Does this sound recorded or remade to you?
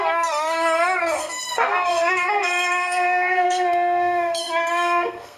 remade